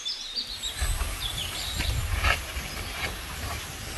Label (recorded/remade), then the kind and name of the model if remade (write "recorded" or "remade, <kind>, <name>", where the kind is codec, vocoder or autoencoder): remade, vocoder, BigVGAN v2